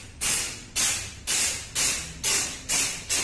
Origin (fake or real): real